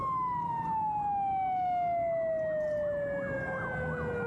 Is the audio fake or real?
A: real